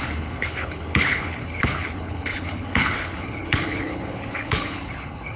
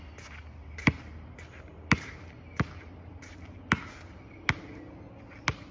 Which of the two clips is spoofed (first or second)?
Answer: first